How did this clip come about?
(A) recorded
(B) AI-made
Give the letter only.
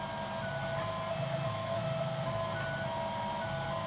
A